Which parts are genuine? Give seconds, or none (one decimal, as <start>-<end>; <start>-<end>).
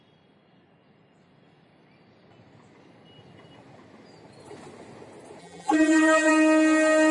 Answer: 0.0-5.4; 6.3-7.1